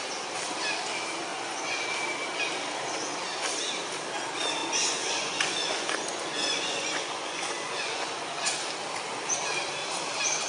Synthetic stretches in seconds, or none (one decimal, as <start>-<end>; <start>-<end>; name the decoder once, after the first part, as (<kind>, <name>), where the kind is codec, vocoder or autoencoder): 1.3-1.8 (vocoder, Vocos); 4.6-8.5